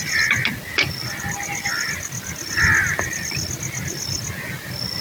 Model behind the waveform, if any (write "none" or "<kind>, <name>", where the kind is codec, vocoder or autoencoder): none